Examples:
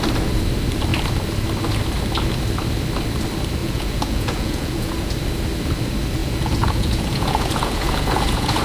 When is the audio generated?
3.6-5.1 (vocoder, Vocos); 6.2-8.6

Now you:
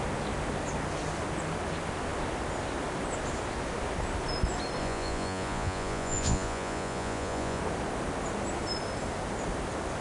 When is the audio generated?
4.8-7.6 (vocoder, Vocos)

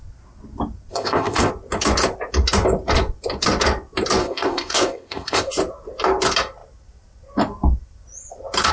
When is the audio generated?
0.9-1.5 (codec, ZipCodec); 4.2-5.5

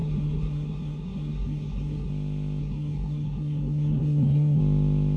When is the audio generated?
0.0-2.1 (codec, SNAC); 2.6-4.6

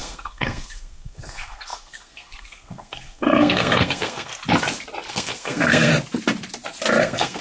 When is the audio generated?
0.0-4.3 (codec, SNAC); 5.1-5.9; 7.0-7.4

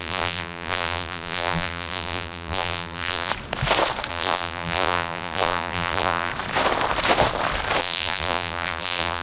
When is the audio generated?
0.0-3.3 (vocoder, BigVGAN v2); 4.1-6.3; 7.8-9.2